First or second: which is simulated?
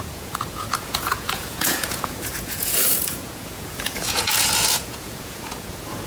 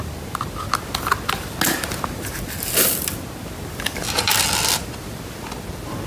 first